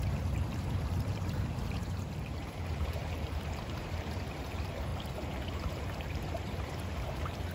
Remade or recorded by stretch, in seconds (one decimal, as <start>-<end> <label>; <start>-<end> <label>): 0.0-4.9 remade; 4.9-5.5 recorded; 5.5-7.5 remade

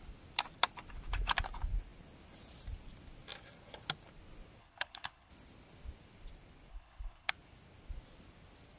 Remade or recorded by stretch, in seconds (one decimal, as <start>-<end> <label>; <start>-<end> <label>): 0.0-4.6 recorded; 4.6-5.3 remade; 5.3-6.7 recorded; 6.7-7.3 remade; 7.3-8.8 recorded

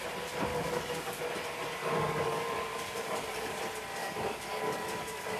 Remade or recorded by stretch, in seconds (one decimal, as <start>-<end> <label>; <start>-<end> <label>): 0.0-0.5 recorded; 0.5-1.2 remade; 1.2-1.8 recorded; 1.8-3.6 remade; 3.6-4.0 recorded; 4.0-5.4 remade

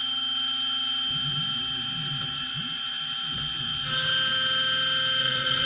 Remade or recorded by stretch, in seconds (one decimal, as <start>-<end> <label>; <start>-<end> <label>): 0.0-5.2 recorded; 5.2-5.7 remade

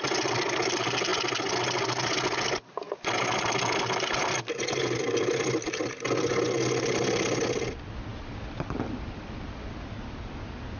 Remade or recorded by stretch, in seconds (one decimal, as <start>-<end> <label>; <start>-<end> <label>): 0.0-10.8 recorded

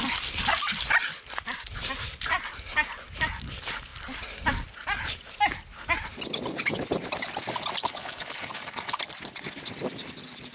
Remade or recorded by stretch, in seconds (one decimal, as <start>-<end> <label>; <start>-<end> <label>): 0.0-7.8 recorded; 7.8-9.0 remade; 9.0-10.5 recorded